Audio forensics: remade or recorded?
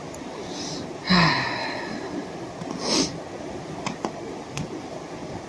recorded